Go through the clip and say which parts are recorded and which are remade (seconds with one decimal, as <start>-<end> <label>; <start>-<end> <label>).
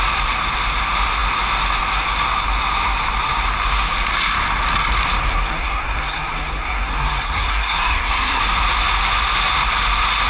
0.0-5.2 recorded; 5.2-8.4 remade; 8.4-10.3 recorded